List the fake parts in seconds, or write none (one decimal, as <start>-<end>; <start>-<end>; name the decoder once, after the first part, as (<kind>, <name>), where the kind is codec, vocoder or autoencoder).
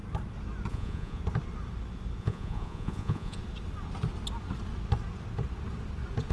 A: 0.7-1.2 (vocoder, Vocos); 2.2-3.4